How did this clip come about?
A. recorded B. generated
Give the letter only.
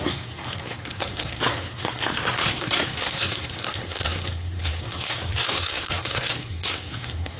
B